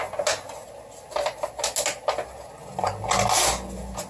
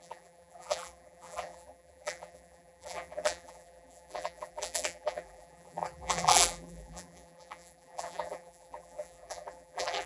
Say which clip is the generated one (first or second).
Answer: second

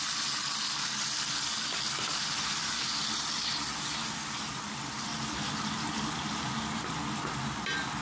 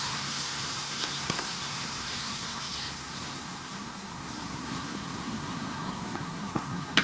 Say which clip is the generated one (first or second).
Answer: second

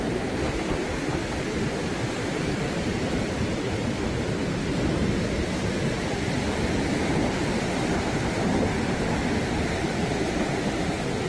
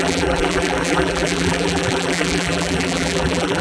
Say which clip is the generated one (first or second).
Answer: second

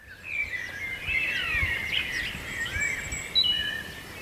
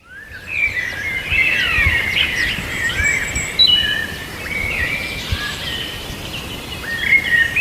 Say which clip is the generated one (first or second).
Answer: second